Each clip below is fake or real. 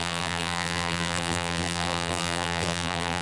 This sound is fake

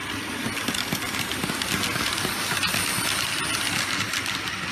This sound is real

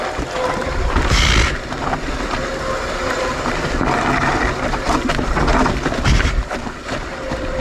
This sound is real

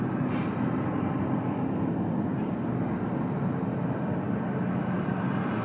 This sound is real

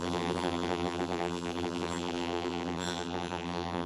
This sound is fake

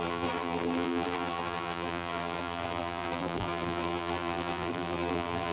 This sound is fake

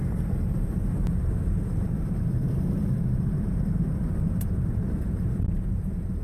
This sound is fake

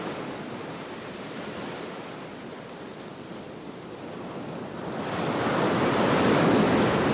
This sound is fake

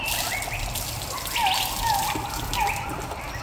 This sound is real